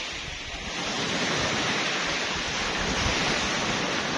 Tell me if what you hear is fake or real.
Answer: real